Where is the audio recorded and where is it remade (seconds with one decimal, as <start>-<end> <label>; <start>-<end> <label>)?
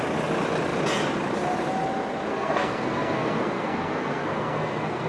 0.0-2.3 recorded; 2.3-5.1 remade